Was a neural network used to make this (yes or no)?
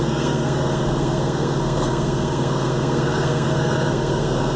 yes